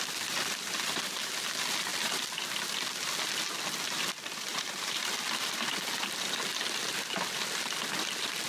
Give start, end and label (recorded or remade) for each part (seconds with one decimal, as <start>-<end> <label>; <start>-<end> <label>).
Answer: 0.0-4.5 recorded; 4.5-5.1 remade; 5.1-8.5 recorded